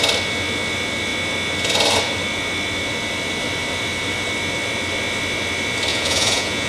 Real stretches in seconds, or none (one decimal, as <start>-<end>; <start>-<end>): 0.0-5.9